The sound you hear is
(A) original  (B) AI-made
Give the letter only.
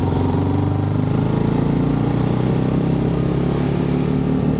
A